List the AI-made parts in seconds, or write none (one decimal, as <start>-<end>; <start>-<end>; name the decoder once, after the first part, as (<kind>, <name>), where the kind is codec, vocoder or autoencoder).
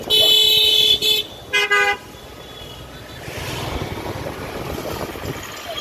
none